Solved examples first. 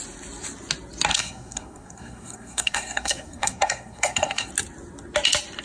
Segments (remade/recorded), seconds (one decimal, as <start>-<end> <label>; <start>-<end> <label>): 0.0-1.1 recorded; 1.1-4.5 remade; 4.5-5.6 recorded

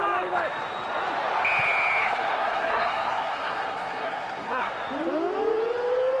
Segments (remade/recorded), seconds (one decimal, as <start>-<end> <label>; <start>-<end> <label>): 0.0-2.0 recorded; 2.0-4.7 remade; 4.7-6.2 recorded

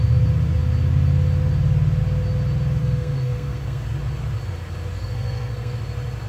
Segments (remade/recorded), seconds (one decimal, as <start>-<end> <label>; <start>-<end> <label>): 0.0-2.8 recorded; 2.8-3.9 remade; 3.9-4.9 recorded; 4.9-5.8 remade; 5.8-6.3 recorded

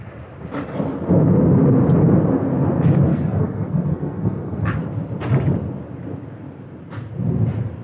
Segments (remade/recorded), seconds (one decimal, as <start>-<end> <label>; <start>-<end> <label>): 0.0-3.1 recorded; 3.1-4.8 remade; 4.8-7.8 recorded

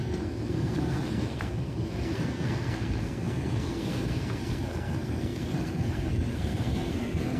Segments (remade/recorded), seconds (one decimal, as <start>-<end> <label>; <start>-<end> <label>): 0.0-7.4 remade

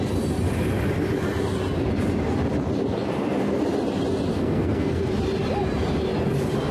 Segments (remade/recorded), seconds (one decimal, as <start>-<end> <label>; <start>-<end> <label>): 0.0-4.3 recorded; 4.3-5.1 remade; 5.1-6.7 recorded